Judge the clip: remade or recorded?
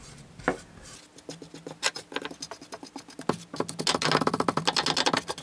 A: recorded